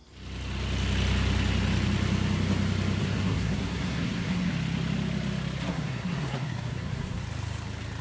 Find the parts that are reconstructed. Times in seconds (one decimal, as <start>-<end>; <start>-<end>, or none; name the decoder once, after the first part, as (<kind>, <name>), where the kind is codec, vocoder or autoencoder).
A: 3.0-4.5 (codec, SNAC); 5.7-7.2